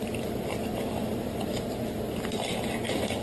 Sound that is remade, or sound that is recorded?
remade